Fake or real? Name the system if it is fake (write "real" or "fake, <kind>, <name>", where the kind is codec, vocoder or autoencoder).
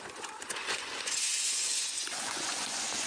fake, vocoder, Vocos